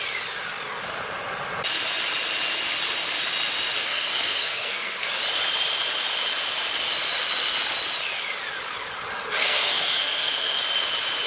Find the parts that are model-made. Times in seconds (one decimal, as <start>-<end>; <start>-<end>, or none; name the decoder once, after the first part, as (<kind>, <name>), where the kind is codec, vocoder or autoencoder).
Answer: 3.8-5.1 (codec, SNAC); 9.4-10.6